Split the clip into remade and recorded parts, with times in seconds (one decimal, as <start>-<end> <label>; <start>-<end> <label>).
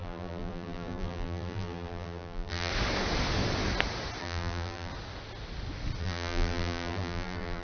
0.0-2.7 remade; 2.7-4.2 recorded; 4.2-4.9 remade; 4.9-6.0 recorded; 6.0-7.6 remade